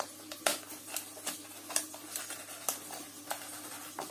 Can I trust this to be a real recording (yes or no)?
yes